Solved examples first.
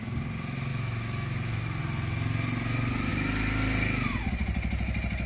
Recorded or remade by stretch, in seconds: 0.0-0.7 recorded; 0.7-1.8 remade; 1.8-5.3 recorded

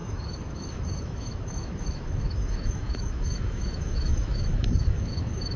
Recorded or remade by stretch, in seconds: 0.0-5.6 remade